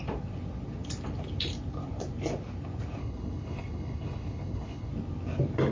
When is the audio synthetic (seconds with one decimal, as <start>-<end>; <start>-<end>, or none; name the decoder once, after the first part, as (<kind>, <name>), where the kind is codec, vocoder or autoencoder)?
3.0-4.9 (codec, HILCodec)